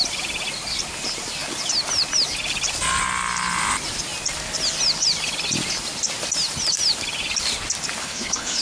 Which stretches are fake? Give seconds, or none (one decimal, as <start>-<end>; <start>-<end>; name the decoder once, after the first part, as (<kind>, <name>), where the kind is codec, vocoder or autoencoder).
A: 8.0-8.6 (codec, HILCodec)